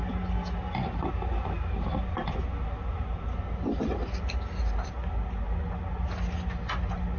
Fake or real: real